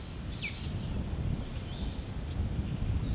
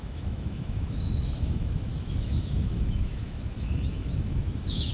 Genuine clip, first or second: first